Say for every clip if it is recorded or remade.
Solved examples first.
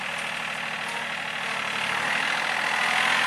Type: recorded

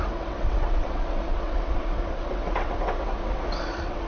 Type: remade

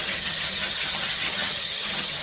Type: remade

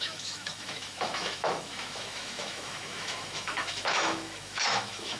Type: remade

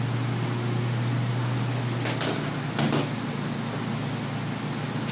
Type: recorded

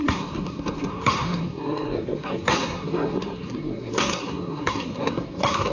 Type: remade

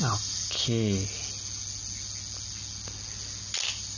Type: recorded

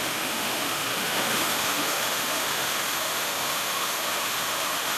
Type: remade